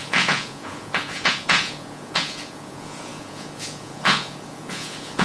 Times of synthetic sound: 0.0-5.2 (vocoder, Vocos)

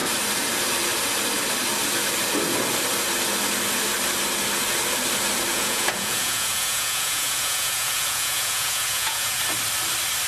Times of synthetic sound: 5.5-9.4 (vocoder, Vocos)

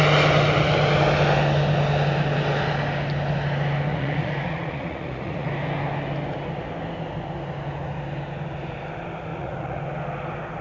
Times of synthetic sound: 3.9-5.5 (vocoder, Vocos); 9.3-9.8

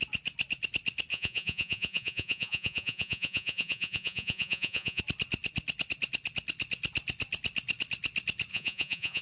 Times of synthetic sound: 1.1-5.0 (vocoder, Vocos); 8.5-9.2

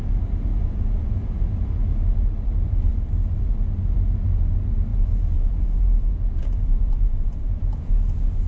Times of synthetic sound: 0.5-1.4 (vocoder, Vocos); 4.9-7.9

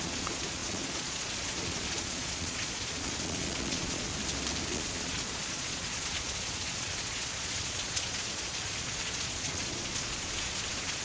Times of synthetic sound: 0.0-4.1 (vocoder, Vocos); 4.7-11.0

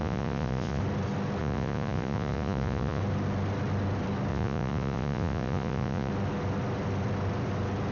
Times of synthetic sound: 0.0-0.8 (vocoder, Vocos); 1.4-3.0; 4.3-6.1